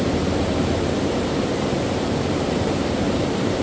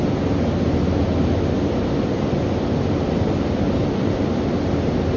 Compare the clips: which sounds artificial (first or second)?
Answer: first